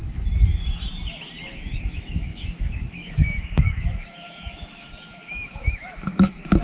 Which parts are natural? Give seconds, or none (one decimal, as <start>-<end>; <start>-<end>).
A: 0.0-1.5